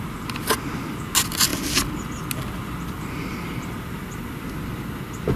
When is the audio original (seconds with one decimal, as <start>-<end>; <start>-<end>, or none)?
0.0-5.4

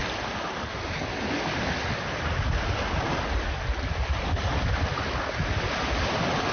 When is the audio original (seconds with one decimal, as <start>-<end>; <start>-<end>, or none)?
0.0-3.1

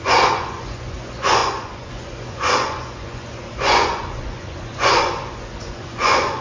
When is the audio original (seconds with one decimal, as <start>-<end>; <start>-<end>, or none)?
none

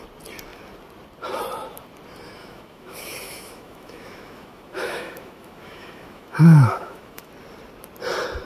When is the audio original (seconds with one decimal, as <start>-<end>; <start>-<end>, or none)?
0.0-2.4; 7.3-8.4